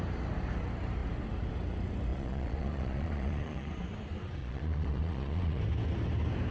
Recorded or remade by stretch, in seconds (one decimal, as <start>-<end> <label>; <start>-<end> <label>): 0.0-2.1 recorded; 2.1-3.7 remade; 3.7-4.4 recorded; 4.4-5.6 remade; 5.6-6.5 recorded